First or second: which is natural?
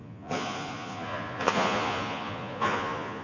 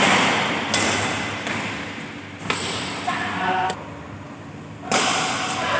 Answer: second